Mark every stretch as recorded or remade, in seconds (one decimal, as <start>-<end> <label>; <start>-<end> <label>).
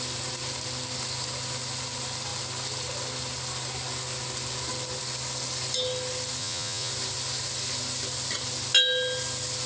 0.0-6.4 recorded; 6.4-6.9 remade; 6.9-9.7 recorded